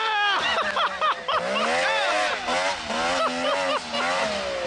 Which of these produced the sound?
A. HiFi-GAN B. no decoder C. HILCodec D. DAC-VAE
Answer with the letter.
B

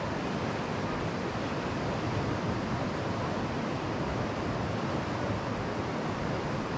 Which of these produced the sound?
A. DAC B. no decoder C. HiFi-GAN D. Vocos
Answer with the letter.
B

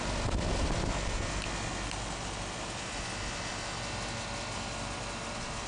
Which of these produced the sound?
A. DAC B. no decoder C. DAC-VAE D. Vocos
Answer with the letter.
B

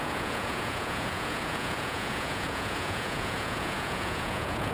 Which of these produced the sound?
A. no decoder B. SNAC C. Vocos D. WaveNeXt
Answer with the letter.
C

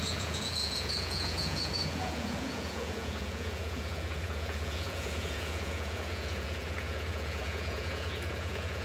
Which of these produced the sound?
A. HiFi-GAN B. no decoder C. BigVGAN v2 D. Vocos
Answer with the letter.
D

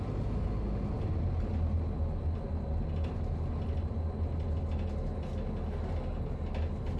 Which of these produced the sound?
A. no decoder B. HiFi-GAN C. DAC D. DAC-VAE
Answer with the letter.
A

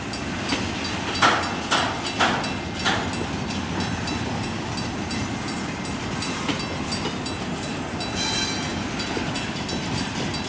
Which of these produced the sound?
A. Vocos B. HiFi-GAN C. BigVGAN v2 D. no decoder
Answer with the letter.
D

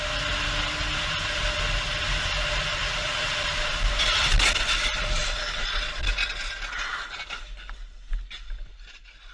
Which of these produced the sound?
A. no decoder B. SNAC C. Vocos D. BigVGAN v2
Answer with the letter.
A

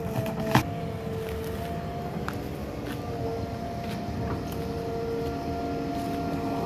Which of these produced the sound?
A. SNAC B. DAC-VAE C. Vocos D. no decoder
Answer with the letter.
D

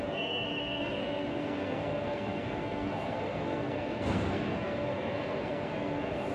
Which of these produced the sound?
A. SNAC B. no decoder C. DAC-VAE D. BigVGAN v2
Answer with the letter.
A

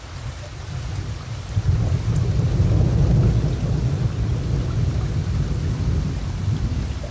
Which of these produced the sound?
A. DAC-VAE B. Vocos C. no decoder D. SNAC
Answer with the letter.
C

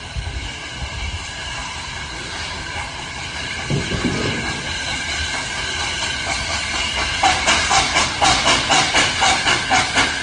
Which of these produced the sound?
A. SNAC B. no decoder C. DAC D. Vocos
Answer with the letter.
B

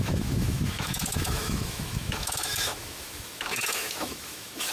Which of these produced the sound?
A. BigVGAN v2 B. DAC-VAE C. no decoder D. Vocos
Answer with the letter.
B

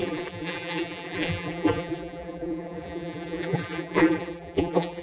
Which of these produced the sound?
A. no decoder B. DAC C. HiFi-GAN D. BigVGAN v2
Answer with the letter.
D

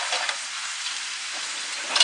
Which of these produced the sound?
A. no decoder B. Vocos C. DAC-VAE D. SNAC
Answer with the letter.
A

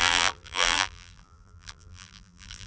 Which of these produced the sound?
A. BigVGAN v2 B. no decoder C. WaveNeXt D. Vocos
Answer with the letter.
A